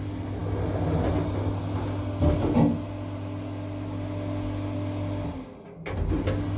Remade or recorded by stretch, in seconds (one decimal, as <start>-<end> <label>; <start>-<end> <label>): 0.0-6.6 recorded